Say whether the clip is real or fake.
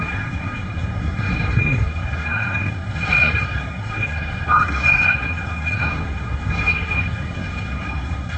fake